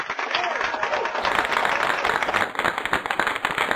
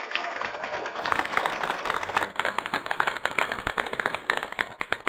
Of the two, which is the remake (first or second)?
second